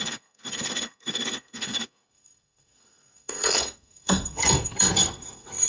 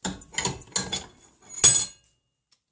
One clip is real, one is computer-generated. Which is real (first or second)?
second